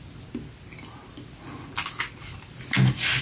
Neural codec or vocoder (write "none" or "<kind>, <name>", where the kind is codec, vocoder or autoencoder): none